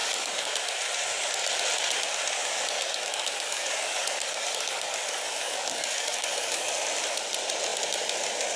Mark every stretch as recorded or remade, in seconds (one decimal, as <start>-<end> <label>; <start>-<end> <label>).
0.0-0.5 remade; 0.5-2.4 recorded; 2.4-6.7 remade; 6.7-8.6 recorded